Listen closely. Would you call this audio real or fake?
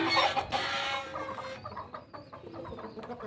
real